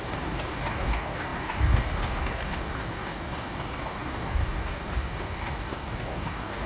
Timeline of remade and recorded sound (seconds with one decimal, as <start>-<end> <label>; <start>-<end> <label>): 0.0-6.7 remade